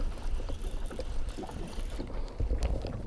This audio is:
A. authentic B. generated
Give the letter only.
A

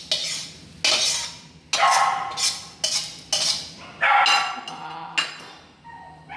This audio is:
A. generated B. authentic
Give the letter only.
B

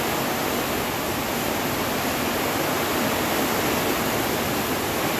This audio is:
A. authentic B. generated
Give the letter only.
A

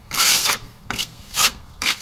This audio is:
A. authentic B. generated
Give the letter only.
B